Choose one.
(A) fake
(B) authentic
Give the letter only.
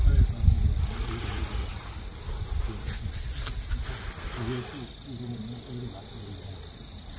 B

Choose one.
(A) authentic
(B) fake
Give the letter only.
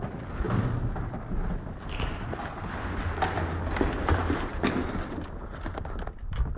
A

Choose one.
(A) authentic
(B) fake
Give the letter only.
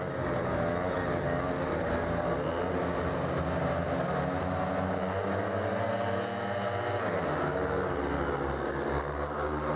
A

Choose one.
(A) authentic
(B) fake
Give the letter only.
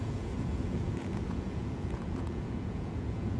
B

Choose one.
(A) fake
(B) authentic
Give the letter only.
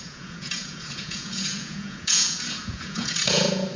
A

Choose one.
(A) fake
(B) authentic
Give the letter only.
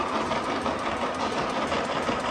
B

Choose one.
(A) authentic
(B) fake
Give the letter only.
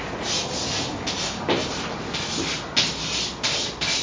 A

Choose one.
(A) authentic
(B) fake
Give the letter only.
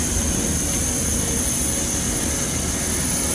A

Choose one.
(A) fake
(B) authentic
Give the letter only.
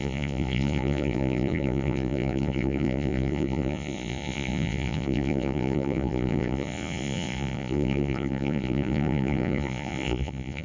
A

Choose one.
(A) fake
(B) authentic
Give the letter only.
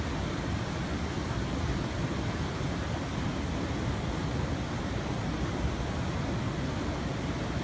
B